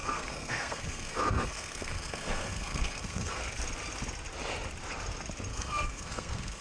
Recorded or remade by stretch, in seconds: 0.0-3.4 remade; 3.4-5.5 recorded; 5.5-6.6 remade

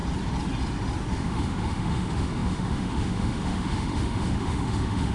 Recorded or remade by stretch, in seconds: 0.0-1.1 recorded; 1.1-5.1 remade

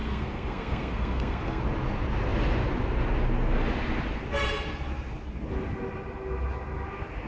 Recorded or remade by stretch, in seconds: 0.0-1.6 remade; 1.6-7.3 recorded

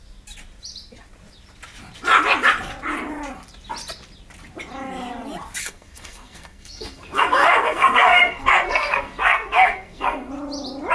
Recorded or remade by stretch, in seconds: 0.0-5.6 recorded; 5.6-10.3 remade; 10.3-10.9 recorded

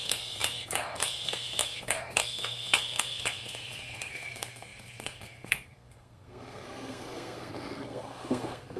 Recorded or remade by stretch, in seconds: 0.0-8.8 remade